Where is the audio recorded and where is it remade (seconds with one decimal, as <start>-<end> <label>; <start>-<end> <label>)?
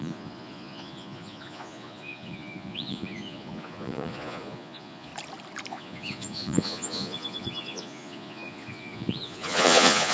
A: 0.0-5.1 remade; 5.1-5.7 recorded; 5.7-10.1 remade